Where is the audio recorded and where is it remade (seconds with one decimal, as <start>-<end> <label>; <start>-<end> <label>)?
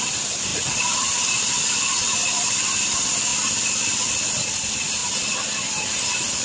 0.0-5.0 remade; 5.0-6.4 recorded